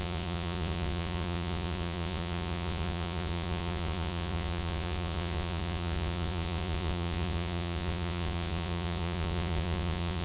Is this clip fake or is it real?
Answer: fake